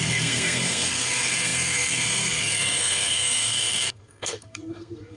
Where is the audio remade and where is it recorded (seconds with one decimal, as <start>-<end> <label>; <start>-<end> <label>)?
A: 0.0-5.2 remade